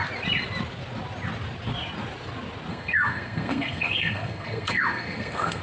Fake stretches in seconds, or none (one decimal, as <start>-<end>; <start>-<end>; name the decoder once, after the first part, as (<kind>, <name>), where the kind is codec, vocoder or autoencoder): 2.7-5.6 (codec, SNAC)